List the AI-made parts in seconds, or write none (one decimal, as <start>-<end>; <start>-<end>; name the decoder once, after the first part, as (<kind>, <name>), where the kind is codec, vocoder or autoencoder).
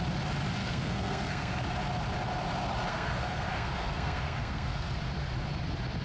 0.6-1.6 (codec, SNAC); 2.9-5.0